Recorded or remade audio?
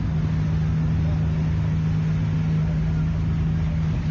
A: recorded